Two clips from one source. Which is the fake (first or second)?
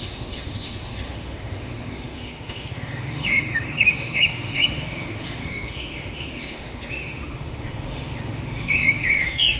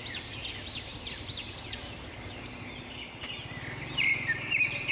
first